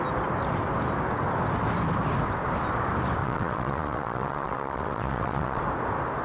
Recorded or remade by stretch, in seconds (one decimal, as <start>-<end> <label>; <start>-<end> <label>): 0.0-3.2 recorded; 3.2-5.6 remade; 5.6-6.2 recorded